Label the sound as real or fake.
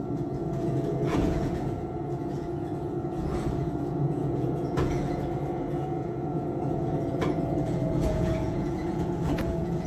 fake